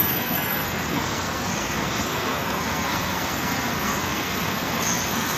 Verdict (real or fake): fake